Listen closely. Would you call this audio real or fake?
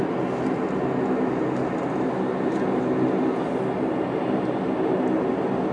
real